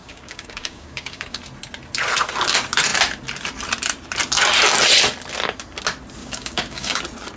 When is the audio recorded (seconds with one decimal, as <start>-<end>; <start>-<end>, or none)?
1.4-6.2; 7.0-7.4